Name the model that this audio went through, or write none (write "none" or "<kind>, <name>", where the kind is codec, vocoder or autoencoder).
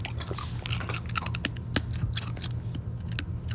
none